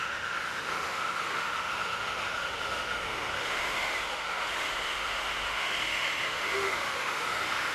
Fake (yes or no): yes